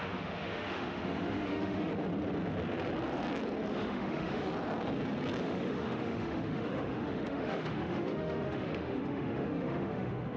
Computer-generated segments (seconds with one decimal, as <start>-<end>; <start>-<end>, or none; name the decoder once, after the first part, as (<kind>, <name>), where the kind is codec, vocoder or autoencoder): 0.0-1.9 (autoencoder, DAC-VAE); 3.7-4.5; 5.4-10.4